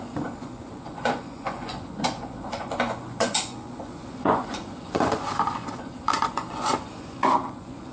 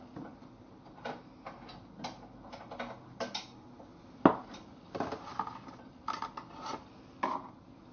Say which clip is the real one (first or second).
second